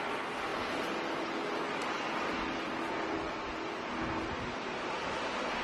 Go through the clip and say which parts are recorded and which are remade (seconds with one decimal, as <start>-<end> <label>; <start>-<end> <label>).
0.0-5.6 recorded